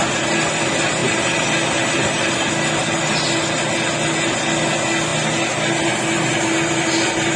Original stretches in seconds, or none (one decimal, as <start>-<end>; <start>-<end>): 0.0-1.0; 2.5-7.4